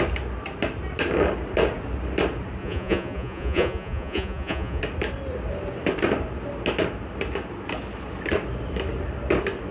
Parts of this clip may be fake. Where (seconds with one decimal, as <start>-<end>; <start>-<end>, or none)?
2.6-4.8